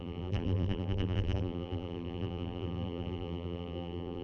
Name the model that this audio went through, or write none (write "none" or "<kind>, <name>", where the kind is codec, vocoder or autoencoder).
vocoder, BigVGAN v2